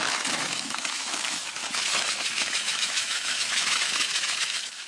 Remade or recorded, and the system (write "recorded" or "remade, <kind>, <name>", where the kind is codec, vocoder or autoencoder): remade, autoencoder, DAC-VAE